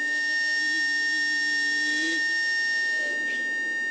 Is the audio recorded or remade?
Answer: recorded